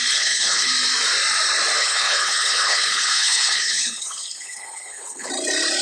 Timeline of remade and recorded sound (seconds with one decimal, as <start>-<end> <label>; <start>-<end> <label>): 0.0-0.7 remade; 0.7-1.8 recorded; 1.8-5.3 remade; 5.3-5.8 recorded

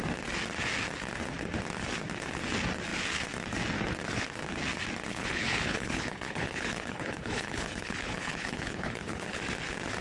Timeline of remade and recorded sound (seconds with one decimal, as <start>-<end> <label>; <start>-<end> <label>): 0.0-5.1 recorded; 5.1-9.4 remade; 9.4-10.0 recorded

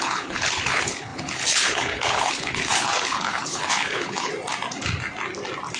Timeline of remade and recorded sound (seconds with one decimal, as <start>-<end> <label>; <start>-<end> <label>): 0.0-4.3 remade; 4.3-5.8 recorded

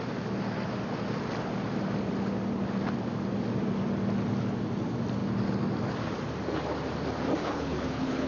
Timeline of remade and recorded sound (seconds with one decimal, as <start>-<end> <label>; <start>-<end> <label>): 0.0-7.4 recorded; 7.4-8.3 remade

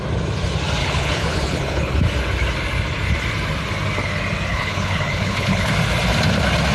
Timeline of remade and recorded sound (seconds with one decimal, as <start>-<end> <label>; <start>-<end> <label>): 0.0-0.8 recorded; 0.8-2.0 remade; 2.0-4.5 recorded; 4.5-5.7 remade; 5.7-6.7 recorded